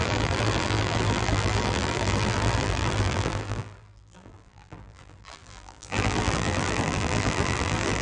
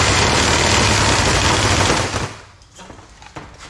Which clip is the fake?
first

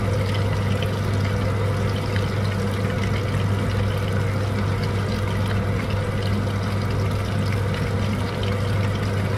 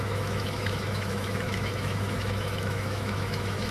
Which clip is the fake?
second